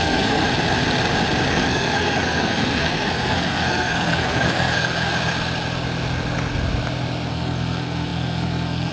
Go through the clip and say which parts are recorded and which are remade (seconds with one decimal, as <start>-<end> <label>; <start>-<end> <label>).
0.0-0.4 remade; 0.4-1.5 recorded; 1.5-5.1 remade; 5.1-7.3 recorded; 7.3-8.9 remade